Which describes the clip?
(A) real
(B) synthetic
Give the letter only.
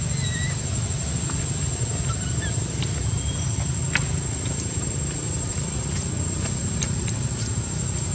A